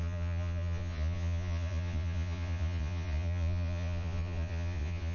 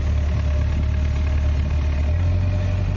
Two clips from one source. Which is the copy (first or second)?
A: first